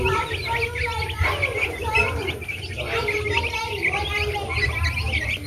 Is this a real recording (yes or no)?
yes